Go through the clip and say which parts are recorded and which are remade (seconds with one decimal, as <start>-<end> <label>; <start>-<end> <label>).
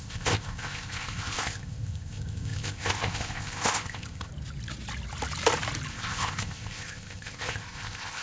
0.0-4.3 remade; 4.3-5.9 recorded; 5.9-8.2 remade